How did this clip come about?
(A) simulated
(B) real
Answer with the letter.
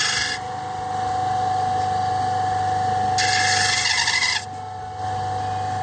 B